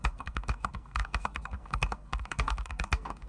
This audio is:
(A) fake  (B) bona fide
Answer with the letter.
A